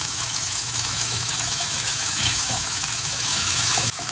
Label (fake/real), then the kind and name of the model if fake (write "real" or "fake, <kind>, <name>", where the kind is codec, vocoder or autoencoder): fake, autoencoder, DAC-VAE